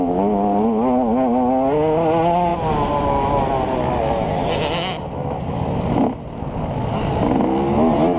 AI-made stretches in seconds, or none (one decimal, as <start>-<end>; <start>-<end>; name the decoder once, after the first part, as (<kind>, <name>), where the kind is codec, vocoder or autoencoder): none